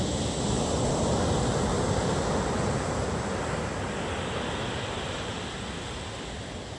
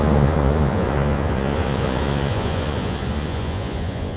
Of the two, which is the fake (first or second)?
second